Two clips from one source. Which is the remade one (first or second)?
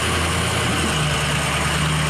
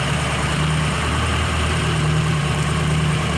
second